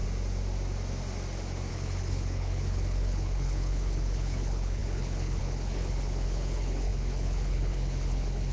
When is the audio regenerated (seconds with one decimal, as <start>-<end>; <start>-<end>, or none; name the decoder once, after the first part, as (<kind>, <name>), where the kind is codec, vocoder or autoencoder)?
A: 1.7-8.5 (codec, HILCodec)